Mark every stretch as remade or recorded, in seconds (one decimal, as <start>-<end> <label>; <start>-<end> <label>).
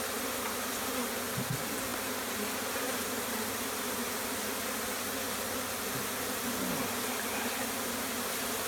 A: 0.0-8.7 recorded